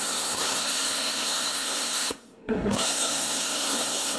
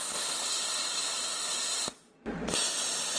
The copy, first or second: first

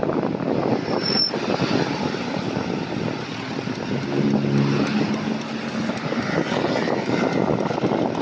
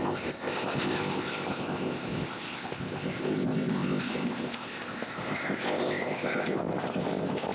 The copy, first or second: second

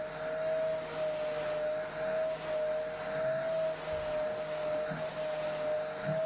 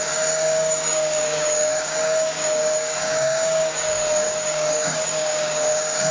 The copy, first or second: second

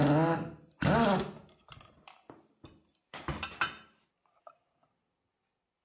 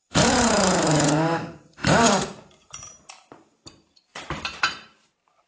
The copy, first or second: second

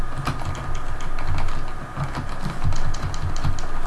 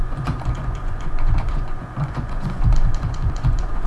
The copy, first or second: second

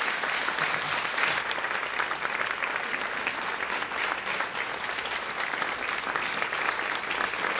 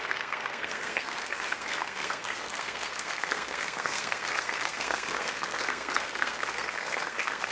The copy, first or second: second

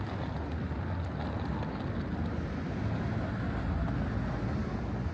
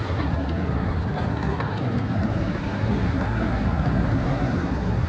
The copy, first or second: second